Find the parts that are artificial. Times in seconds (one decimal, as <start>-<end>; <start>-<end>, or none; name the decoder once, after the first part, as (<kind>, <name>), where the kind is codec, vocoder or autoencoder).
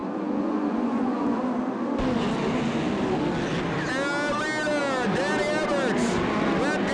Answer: 0.0-1.4 (vocoder, Vocos)